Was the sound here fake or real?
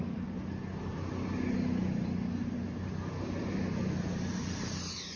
real